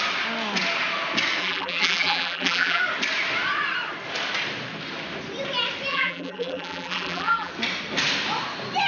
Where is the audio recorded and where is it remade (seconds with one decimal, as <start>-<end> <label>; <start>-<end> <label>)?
0.0-1.4 recorded; 1.4-2.8 remade; 2.8-5.9 recorded; 5.9-7.5 remade; 7.5-8.9 recorded

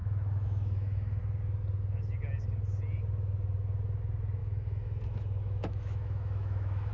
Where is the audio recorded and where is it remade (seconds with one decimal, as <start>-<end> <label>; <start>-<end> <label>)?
0.0-1.2 remade; 1.2-4.4 recorded; 4.4-6.9 remade

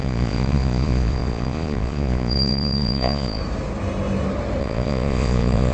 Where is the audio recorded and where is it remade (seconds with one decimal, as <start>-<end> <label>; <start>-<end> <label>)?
0.0-3.4 remade; 3.4-4.6 recorded; 4.6-5.7 remade

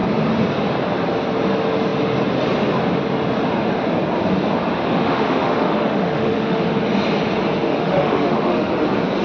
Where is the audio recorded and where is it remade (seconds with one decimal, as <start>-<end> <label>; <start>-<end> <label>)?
0.0-4.8 recorded; 4.8-6.6 remade; 6.6-7.7 recorded; 7.7-8.7 remade; 8.7-9.2 recorded

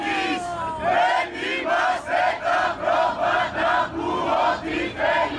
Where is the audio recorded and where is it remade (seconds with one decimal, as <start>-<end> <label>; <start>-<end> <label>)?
0.0-5.4 recorded

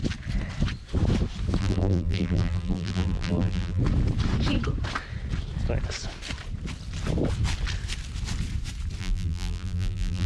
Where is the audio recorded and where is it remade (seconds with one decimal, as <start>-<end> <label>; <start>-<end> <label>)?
0.0-1.6 recorded; 1.6-3.8 remade; 3.8-9.0 recorded; 9.0-10.3 remade